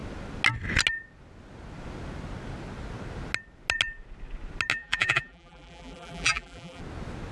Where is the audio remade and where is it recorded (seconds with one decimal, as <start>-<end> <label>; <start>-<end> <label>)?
0.0-4.7 recorded; 4.7-6.8 remade; 6.8-7.3 recorded